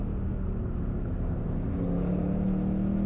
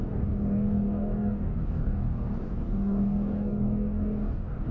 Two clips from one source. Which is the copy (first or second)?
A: second